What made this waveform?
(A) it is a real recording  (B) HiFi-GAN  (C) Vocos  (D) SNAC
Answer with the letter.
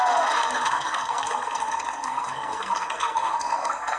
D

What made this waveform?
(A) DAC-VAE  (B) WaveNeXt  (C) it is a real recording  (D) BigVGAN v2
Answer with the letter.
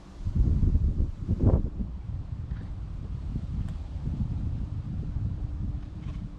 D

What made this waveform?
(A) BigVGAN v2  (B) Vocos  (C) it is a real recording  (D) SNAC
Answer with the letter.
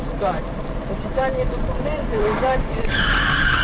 A